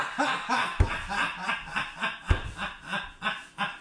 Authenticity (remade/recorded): recorded